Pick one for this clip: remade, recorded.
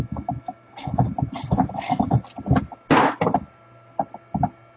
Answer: recorded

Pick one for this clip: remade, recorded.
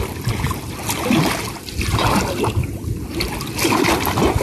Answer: recorded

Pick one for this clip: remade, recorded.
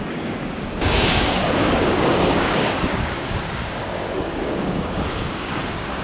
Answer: remade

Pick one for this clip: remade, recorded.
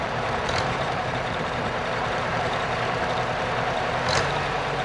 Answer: remade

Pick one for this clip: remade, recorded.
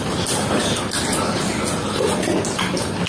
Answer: recorded